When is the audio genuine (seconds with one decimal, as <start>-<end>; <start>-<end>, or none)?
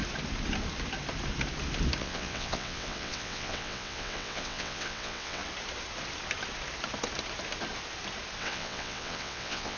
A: 0.0-2.0; 5.4-8.4